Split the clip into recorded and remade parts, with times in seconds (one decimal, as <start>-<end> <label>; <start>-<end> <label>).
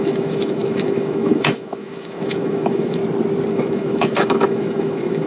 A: 0.0-3.0 remade; 3.0-3.5 recorded; 3.5-5.3 remade